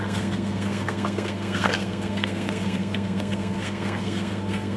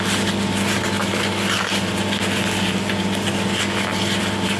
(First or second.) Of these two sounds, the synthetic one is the first